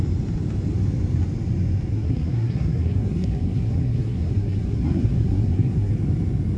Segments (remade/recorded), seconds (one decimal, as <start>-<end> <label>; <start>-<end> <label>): 0.0-1.9 recorded; 1.9-5.9 remade; 5.9-6.6 recorded